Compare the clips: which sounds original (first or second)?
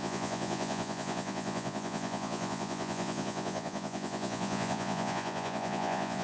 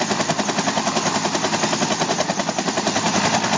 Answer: second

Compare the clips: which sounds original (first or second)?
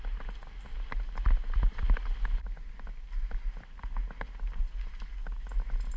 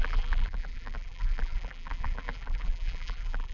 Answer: first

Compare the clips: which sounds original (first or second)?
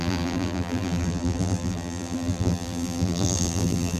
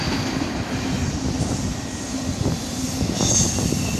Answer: second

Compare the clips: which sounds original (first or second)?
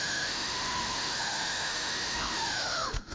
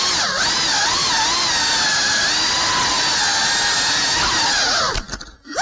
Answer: second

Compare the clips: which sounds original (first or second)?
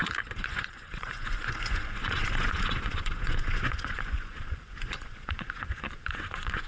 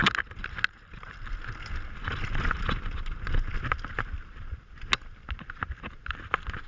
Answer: second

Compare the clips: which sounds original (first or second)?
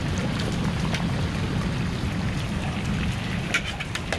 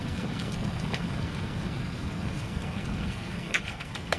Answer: first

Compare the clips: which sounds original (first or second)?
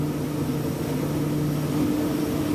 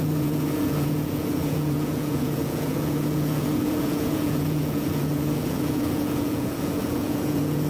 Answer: first